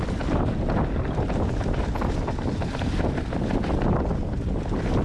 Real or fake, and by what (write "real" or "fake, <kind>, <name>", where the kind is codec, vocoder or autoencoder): real